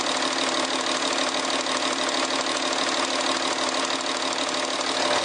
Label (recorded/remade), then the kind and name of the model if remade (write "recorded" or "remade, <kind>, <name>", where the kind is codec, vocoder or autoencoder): recorded